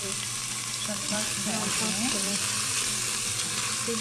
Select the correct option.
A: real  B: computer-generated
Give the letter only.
B